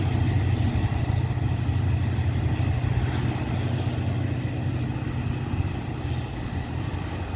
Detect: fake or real real